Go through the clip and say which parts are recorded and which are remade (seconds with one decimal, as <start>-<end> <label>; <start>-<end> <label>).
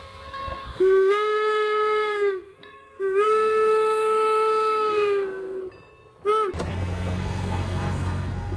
0.0-5.6 remade; 5.6-6.7 recorded; 6.7-8.6 remade